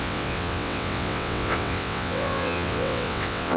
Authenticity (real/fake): fake